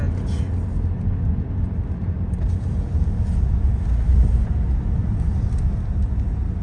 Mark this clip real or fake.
real